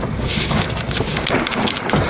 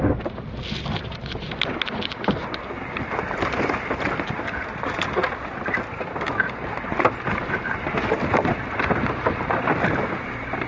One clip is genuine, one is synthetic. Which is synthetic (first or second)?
first